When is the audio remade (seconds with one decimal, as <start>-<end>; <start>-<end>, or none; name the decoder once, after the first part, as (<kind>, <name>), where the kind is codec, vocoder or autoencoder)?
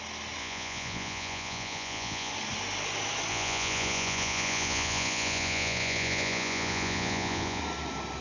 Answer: 0.4-2.3 (vocoder, Vocos); 3.3-7.6